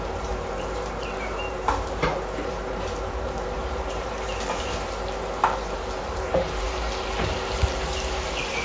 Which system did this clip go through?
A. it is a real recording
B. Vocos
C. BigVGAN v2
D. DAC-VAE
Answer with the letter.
C